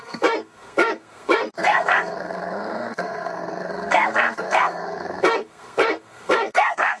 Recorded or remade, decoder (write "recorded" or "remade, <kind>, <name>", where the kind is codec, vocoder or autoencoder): remade, codec, SNAC